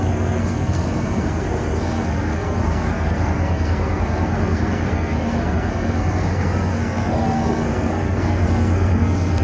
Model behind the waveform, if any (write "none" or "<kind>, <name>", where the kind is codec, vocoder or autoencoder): codec, SNAC